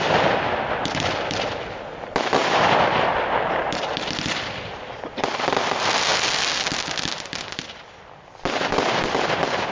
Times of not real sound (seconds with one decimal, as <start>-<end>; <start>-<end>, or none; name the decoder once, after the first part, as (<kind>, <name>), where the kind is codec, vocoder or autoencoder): 2.4-3.1 (vocoder, BigVGAN v2); 6.1-9.2